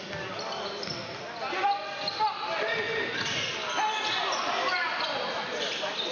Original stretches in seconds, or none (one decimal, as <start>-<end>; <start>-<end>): 0.0-6.1